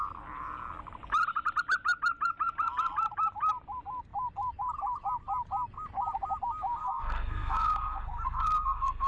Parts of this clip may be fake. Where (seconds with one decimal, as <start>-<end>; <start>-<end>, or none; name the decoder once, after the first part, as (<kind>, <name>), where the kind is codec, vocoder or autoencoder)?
6.8-9.1 (codec, SNAC)